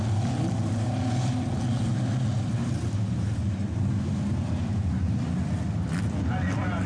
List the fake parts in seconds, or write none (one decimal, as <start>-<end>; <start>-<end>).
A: 2.6-5.0